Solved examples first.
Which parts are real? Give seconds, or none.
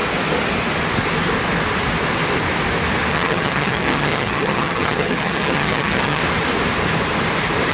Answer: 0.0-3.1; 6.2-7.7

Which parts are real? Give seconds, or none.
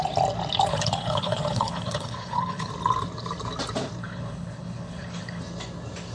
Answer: 0.0-0.7; 2.7-4.0; 5.4-6.1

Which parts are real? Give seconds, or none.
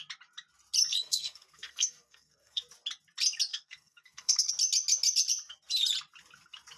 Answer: 0.0-0.9; 2.6-3.5; 4.5-6.8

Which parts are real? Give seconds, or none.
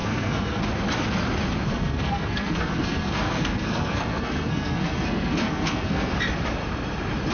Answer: 0.6-1.7; 6.1-7.3